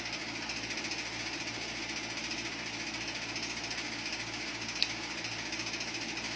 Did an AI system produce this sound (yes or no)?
no